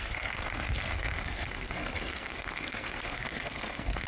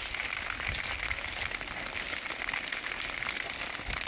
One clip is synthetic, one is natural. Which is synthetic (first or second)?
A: first